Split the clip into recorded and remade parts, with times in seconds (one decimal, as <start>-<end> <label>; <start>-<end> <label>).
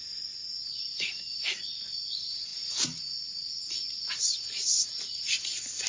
0.0-5.9 recorded